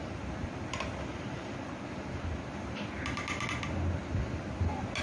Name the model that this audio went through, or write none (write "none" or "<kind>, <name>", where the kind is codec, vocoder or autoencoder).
none